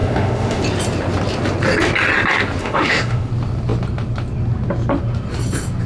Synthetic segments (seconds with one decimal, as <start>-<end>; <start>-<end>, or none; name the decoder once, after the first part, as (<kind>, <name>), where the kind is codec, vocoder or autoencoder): 0.0-0.6 (autoencoder, DAC-VAE); 2.6-3.3